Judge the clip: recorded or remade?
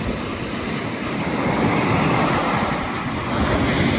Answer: recorded